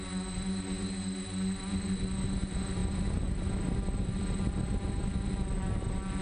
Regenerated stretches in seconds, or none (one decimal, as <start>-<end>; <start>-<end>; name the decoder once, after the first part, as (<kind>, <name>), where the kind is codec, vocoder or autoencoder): none